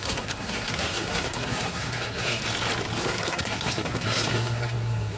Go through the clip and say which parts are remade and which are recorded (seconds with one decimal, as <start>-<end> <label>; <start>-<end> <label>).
0.0-2.4 remade; 2.4-3.0 recorded; 3.0-5.2 remade